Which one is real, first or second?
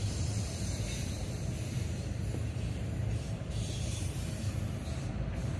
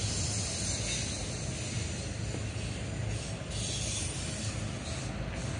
second